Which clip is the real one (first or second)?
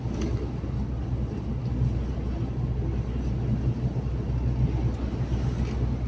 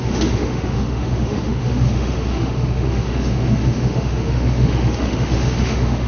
first